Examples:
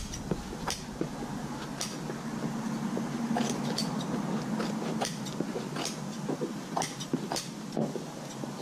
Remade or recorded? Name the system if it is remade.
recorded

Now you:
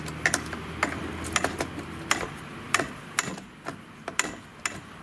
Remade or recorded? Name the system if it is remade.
recorded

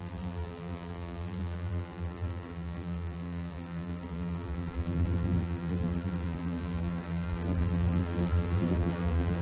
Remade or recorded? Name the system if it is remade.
remade, vocoder, BigVGAN v2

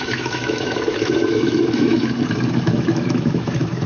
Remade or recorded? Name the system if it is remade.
remade, autoencoder, DAC-VAE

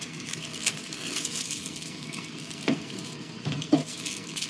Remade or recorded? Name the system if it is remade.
remade, codec, SNAC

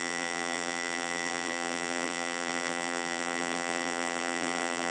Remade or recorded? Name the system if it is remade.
remade, vocoder, BigVGAN v2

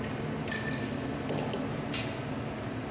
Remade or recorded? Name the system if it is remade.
recorded